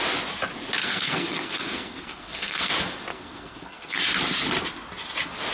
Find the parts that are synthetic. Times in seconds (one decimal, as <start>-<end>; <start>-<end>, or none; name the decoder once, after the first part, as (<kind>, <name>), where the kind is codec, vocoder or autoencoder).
0.8-2.7 (codec, SNAC); 3.1-4.0